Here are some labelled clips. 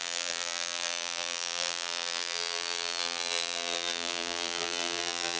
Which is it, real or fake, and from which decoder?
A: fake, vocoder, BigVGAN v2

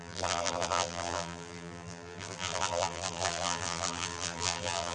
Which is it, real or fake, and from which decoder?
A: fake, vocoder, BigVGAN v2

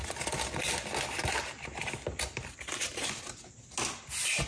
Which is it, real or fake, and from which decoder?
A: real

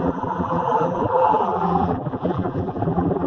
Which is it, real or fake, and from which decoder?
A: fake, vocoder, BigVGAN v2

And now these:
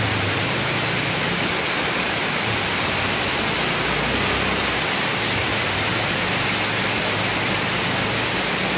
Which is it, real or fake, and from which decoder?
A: real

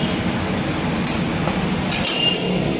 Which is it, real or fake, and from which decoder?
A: real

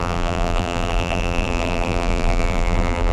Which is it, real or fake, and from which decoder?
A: fake, vocoder, BigVGAN v2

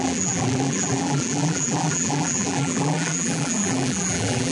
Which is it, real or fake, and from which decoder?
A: fake, vocoder, BigVGAN v2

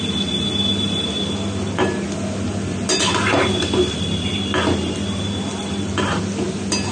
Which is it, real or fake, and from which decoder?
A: real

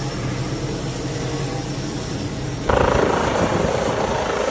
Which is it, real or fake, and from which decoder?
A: real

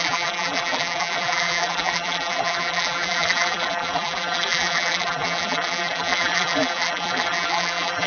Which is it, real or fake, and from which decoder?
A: fake, vocoder, BigVGAN v2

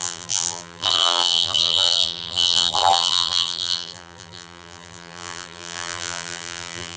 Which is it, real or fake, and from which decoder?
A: fake, vocoder, BigVGAN v2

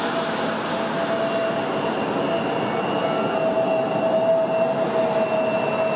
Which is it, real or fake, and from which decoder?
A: real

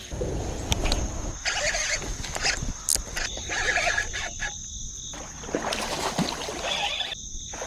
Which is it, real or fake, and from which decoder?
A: real